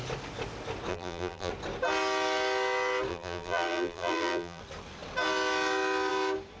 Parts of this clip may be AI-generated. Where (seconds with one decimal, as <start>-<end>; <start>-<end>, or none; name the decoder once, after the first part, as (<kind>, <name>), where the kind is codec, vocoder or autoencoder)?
0.9-1.5 (vocoder, BigVGAN v2); 3.1-4.6